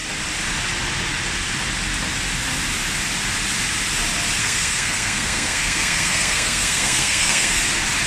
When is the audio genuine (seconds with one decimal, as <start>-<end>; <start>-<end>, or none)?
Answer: 0.0-4.4; 7.6-8.1